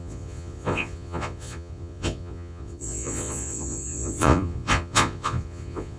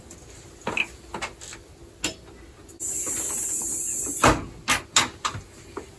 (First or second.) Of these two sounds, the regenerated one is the first